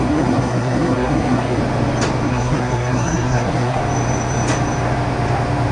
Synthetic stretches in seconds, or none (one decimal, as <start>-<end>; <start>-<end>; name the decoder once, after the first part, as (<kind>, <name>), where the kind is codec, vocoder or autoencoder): 0.0-1.6 (codec, SNAC); 2.3-3.8